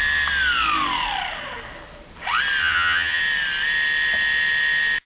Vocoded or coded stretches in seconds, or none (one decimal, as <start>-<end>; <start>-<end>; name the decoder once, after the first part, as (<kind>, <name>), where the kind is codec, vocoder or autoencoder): 2.6-3.2 (vocoder, HiFi-GAN)